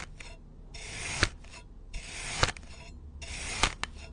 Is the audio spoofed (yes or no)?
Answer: no